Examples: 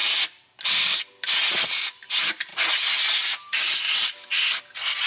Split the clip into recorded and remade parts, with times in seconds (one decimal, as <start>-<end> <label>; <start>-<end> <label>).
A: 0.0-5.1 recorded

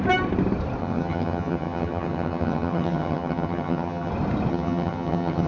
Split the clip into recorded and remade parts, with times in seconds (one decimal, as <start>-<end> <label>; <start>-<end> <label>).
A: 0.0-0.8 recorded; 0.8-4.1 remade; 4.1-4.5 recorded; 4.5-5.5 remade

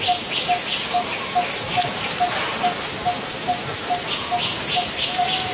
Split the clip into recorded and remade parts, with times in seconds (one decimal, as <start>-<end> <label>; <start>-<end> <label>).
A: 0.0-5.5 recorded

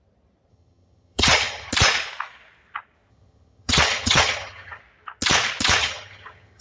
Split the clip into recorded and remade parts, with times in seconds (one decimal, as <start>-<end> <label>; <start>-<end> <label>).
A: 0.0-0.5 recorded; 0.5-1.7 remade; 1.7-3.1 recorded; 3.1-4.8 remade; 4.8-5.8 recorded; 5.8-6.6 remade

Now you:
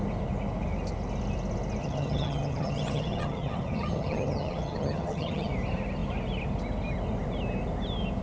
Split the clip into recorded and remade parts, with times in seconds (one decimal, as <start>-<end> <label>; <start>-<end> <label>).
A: 0.0-1.8 recorded; 1.8-5.5 remade; 5.5-8.2 recorded